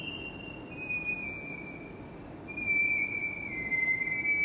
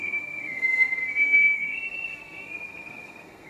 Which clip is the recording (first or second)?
first